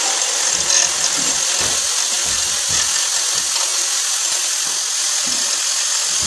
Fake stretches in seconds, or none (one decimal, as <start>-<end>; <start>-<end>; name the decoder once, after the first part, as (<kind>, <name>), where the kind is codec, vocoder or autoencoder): none